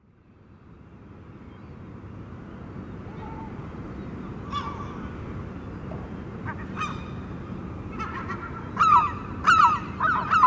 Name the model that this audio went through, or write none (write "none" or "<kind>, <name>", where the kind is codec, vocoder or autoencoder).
none